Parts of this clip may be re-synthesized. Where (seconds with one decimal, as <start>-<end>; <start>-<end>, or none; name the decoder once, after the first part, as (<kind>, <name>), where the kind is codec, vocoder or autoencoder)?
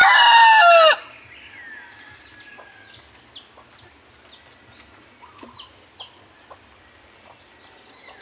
none